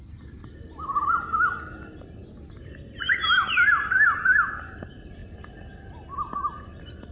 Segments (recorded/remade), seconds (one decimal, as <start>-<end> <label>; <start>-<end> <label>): 0.0-7.1 recorded

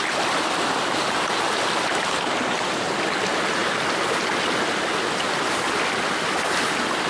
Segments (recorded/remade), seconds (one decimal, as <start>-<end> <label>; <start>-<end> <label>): 0.0-7.1 recorded

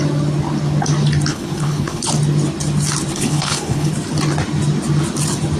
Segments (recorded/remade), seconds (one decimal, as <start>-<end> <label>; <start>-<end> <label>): 0.0-1.3 recorded; 1.3-2.1 remade; 2.1-3.1 recorded; 3.1-3.9 remade; 3.9-5.6 recorded

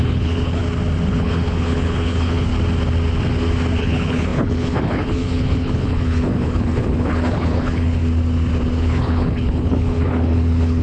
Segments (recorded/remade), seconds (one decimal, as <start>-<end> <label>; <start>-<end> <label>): 0.0-0.6 remade; 0.6-1.1 recorded; 1.1-2.5 remade; 2.5-3.8 recorded; 3.8-8.0 remade; 8.0-8.8 recorded; 8.8-10.8 remade

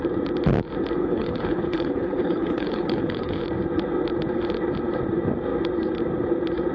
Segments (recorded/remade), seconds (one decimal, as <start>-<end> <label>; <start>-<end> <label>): 0.0-1.0 recorded; 1.0-3.4 remade; 3.4-6.7 recorded